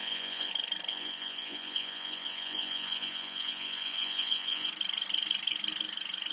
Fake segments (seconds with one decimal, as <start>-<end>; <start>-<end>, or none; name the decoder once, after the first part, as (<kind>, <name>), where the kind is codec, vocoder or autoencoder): 0.0-0.5 (vocoder, Vocos); 0.9-4.7

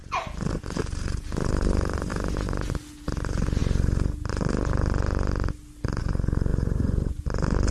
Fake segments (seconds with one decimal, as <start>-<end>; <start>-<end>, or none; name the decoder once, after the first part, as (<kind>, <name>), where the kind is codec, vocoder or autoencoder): 6.5-7.1 (vocoder, Vocos)

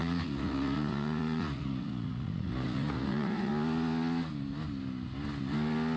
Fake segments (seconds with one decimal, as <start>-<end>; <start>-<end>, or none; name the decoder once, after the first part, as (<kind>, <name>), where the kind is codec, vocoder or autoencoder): 0.0-3.5 (vocoder, Vocos)

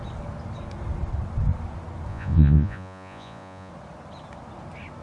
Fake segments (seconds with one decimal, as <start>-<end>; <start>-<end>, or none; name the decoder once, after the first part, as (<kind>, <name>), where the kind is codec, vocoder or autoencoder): 2.1-3.7 (vocoder, Vocos)

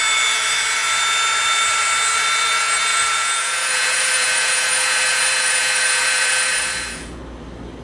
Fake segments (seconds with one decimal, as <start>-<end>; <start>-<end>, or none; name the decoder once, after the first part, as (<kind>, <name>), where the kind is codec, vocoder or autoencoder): 2.9-7.2 (vocoder, Vocos)

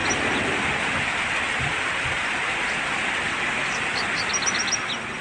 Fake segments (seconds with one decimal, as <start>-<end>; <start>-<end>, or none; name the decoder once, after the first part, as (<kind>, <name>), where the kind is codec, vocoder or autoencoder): none

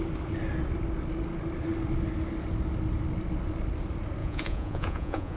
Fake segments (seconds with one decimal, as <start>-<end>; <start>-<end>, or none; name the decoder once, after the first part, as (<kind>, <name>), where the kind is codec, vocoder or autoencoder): 4.2-5.4 (vocoder, Vocos)